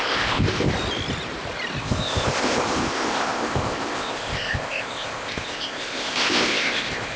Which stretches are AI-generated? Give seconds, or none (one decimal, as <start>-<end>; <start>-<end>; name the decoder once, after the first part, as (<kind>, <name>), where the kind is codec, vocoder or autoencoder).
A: 0.0-0.7 (codec, ZipCodec); 1.8-7.2